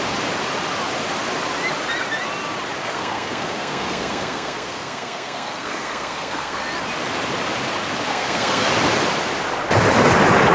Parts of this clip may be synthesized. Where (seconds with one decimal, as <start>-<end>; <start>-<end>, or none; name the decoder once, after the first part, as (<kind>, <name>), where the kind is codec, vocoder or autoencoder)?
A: 2.8-6.6 (codec, SNAC); 8.1-8.7